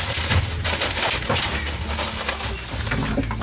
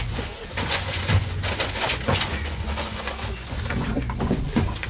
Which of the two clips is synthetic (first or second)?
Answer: second